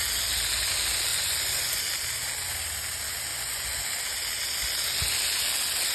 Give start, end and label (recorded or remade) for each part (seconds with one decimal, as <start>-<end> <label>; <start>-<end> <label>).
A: 0.0-1.1 recorded; 1.1-1.8 remade; 1.8-3.3 recorded; 3.3-3.8 remade; 3.8-5.9 recorded